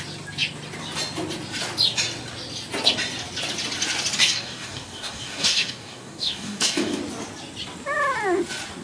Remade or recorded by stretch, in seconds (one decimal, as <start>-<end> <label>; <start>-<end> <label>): 0.0-4.2 recorded; 4.2-7.0 remade; 7.0-8.8 recorded

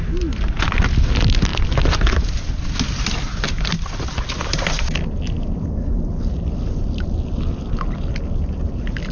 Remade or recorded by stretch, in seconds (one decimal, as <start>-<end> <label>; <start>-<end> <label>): 0.0-9.1 recorded